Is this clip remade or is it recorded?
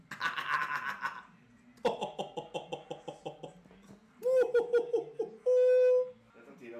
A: recorded